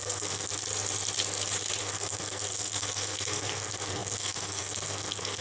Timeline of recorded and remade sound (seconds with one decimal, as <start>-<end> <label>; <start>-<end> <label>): 0.0-0.5 remade; 0.5-1.8 recorded; 1.8-5.4 remade